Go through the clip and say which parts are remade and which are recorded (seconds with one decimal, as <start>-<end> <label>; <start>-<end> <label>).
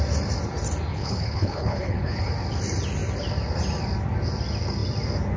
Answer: 0.0-0.9 recorded; 0.9-2.3 remade; 2.3-5.4 recorded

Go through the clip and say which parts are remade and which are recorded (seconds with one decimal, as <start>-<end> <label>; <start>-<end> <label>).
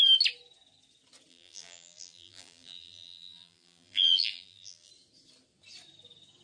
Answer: 0.0-1.3 recorded; 1.3-4.9 remade; 4.9-6.4 recorded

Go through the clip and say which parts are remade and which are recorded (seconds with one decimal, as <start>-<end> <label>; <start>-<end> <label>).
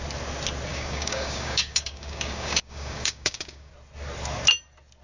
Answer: 0.0-0.7 recorded; 0.7-3.7 remade; 3.7-5.0 recorded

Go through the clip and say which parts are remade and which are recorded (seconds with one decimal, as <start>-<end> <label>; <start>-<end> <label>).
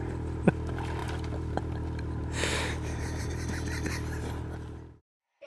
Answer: 0.0-5.5 recorded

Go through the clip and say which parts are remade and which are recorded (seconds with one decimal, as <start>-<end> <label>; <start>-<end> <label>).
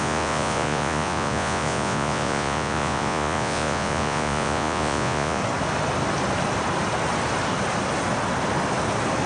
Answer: 0.0-5.4 remade; 5.4-9.3 recorded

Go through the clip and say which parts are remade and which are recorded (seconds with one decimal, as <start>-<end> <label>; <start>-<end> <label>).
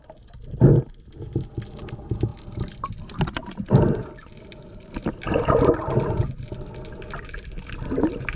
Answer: 0.0-3.4 recorded; 3.4-5.3 remade; 5.3-8.3 recorded